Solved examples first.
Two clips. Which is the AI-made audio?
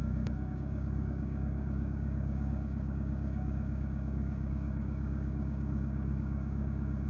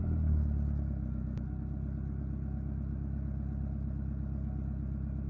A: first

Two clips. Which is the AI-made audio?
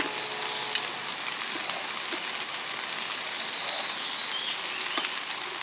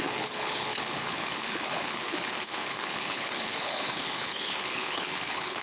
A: second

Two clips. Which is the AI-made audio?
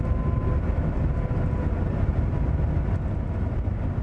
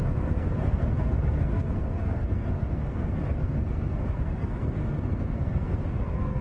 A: second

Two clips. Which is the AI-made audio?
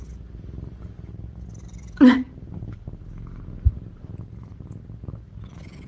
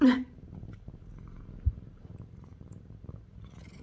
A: second